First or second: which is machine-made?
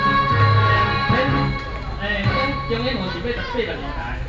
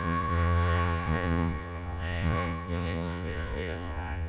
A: second